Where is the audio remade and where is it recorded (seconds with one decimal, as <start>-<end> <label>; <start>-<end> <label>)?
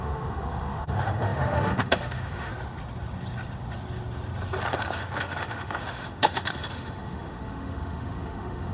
0.0-2.5 remade; 2.5-4.7 recorded; 4.7-8.7 remade